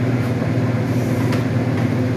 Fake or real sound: real